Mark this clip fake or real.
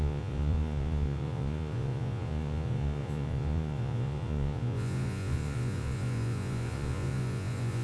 fake